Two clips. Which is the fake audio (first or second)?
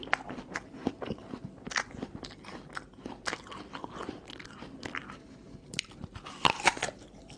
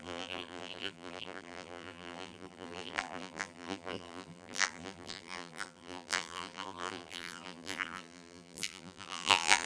second